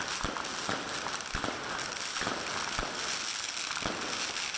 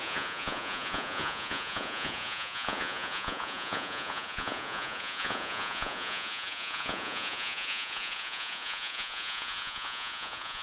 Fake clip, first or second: second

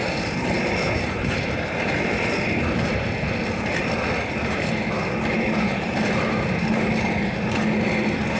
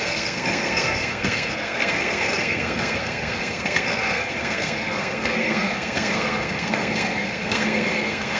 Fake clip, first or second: second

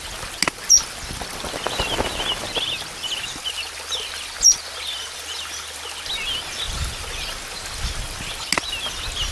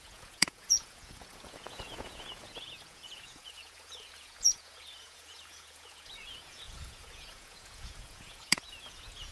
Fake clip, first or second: second